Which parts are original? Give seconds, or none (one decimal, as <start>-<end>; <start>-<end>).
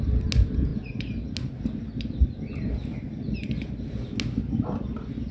0.0-5.3